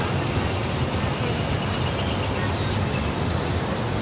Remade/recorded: recorded